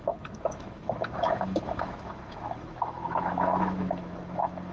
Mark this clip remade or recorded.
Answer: remade